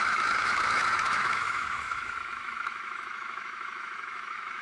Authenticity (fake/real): fake